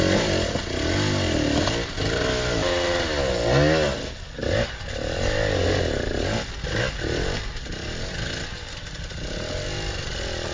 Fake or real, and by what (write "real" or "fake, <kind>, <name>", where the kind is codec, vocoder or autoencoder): real